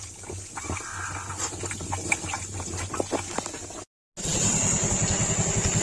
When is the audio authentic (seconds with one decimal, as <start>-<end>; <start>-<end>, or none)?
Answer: 0.0-5.8

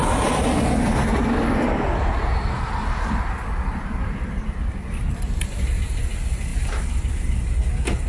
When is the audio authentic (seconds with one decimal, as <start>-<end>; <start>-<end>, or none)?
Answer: 0.0-4.8; 6.0-8.1

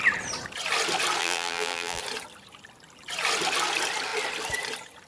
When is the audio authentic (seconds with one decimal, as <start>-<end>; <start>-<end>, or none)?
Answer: 0.0-1.2; 2.0-5.1

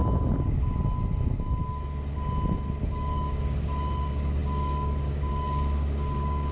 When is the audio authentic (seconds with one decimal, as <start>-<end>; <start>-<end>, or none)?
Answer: 0.0-2.9

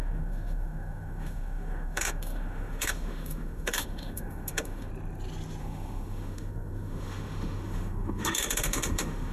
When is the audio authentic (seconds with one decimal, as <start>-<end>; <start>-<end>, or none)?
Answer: 4.9-5.6

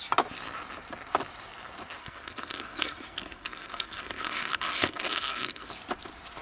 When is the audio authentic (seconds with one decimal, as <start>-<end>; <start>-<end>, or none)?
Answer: 0.0-2.0; 5.7-6.4